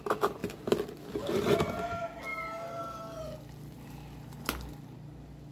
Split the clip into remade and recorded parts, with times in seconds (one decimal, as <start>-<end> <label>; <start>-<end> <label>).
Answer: 0.0-5.5 recorded